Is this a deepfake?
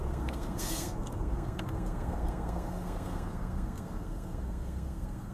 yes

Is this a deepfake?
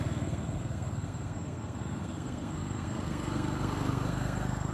yes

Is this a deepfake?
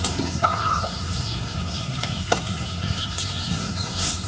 yes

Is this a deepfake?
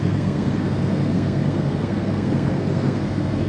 yes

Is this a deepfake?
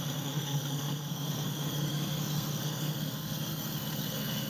yes